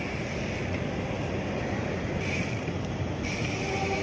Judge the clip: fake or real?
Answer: real